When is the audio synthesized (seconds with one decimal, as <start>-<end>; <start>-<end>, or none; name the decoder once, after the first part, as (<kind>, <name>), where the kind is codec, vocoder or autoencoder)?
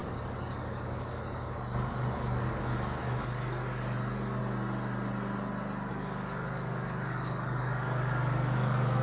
0.0-4.4 (codec, DAC); 5.9-9.0